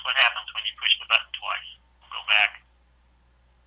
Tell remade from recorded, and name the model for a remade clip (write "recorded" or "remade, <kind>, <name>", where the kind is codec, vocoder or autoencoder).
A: recorded